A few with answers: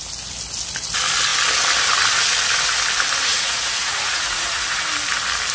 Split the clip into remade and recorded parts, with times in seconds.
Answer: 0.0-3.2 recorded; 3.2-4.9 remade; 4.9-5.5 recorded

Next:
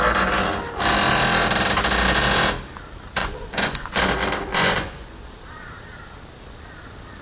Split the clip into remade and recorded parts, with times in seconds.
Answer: 0.0-3.2 recorded; 3.2-4.0 remade; 4.0-4.5 recorded; 4.5-5.3 remade; 5.3-7.2 recorded